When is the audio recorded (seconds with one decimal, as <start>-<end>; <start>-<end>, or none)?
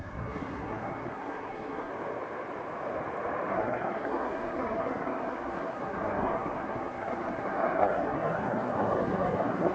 1.9-3.5